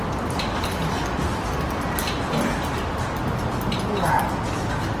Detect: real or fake real